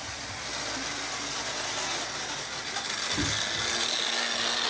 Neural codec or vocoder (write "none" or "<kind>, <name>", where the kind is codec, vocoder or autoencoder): none